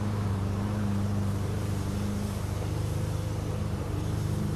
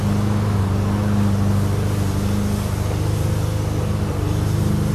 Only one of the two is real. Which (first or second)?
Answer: second